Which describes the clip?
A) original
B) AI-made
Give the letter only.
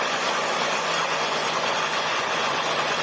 B